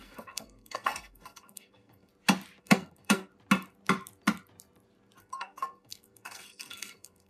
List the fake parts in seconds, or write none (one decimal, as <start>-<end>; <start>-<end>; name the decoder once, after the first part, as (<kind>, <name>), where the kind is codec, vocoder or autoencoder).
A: 0.0-2.1 (codec, SNAC); 2.6-3.3; 5.2-7.3